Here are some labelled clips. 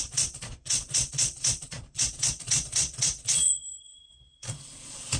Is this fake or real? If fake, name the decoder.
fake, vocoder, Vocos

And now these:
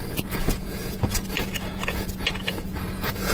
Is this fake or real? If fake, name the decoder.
fake, vocoder, Vocos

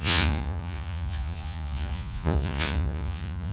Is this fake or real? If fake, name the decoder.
fake, vocoder, Vocos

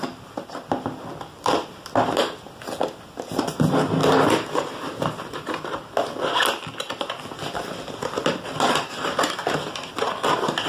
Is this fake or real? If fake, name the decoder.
real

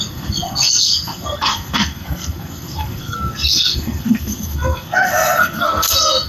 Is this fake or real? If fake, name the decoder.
fake, codec, SNAC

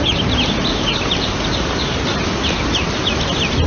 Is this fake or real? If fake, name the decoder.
real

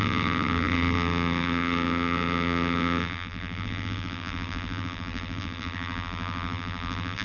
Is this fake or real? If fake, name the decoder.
fake, vocoder, BigVGAN v2